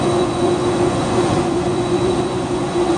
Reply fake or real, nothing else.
fake